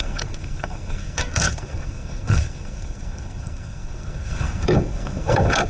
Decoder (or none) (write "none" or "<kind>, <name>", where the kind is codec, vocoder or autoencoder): codec, SNAC